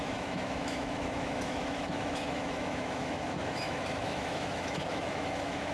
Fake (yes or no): yes